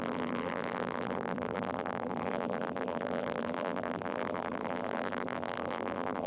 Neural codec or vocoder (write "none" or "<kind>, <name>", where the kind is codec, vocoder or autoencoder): vocoder, BigVGAN v2